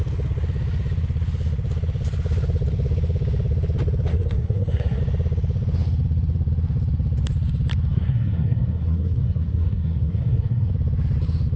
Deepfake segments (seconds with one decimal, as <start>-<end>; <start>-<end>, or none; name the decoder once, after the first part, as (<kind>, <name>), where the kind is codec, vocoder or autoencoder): 4.1-5.0 (codec, SNAC); 7.9-10.7